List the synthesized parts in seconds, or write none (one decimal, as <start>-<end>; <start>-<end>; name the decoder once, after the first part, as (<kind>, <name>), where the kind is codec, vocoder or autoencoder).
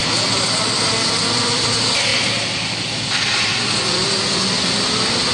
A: none